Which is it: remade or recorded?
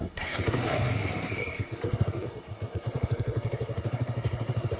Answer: remade